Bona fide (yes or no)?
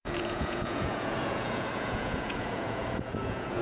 no